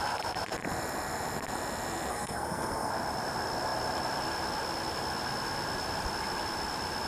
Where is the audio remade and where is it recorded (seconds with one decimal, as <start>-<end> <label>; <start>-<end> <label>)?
0.0-2.1 recorded; 2.1-2.9 remade; 2.9-7.1 recorded